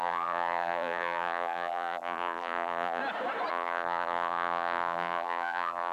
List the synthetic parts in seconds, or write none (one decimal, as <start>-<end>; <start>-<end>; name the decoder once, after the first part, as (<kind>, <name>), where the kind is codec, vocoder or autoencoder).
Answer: 0.0-3.0 (vocoder, BigVGAN v2); 3.5-5.9